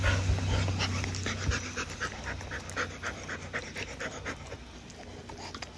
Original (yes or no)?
yes